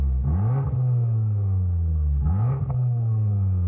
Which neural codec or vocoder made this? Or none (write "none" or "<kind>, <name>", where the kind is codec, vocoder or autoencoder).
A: codec, SNAC